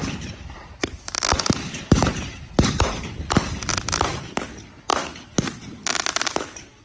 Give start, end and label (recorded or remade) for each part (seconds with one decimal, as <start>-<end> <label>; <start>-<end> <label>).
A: 0.0-3.1 remade; 3.1-6.8 recorded